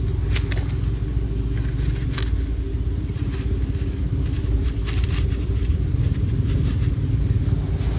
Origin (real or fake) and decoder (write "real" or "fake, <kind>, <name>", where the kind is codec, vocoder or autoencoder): real